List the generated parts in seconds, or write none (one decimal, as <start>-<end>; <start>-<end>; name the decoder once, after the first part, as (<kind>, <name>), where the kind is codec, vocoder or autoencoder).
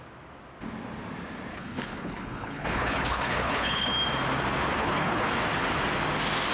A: 1.5-3.9 (codec, HILCodec); 4.8-5.3